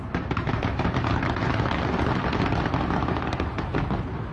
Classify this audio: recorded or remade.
recorded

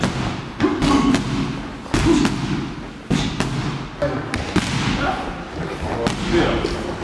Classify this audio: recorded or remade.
recorded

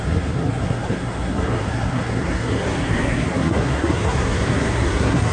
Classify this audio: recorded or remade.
remade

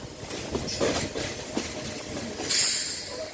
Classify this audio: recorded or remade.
recorded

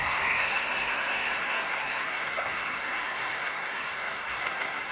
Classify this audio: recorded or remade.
remade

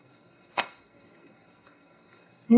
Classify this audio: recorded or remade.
remade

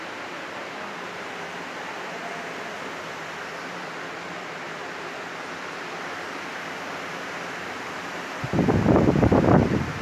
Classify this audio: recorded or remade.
recorded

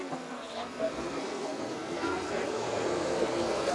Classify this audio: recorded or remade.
remade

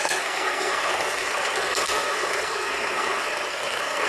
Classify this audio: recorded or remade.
remade